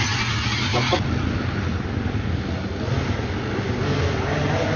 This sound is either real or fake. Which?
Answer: real